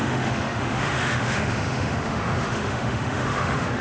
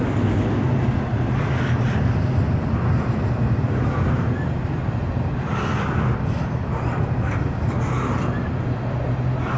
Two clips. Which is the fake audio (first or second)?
first